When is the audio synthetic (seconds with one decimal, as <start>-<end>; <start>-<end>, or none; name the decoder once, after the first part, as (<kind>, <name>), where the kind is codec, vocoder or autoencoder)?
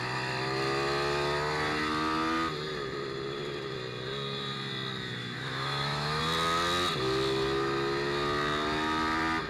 5.2-6.2 (autoencoder, DAC-VAE)